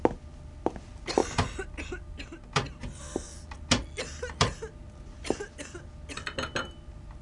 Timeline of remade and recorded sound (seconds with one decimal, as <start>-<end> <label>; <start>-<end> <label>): 0.0-7.2 recorded